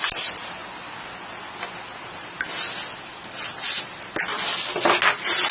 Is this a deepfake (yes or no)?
no